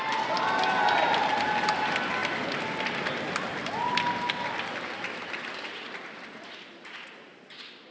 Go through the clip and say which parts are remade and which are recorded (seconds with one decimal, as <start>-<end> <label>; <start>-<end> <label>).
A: 0.0-7.9 recorded